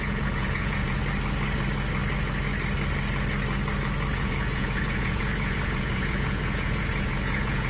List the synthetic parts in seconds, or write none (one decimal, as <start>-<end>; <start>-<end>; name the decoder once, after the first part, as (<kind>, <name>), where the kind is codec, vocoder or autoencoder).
0.0-1.0 (vocoder, Vocos); 4.2-7.7